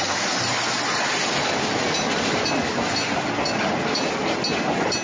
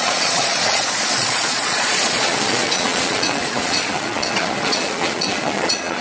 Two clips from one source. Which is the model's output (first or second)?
second